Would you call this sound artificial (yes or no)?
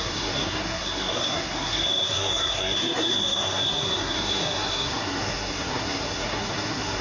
yes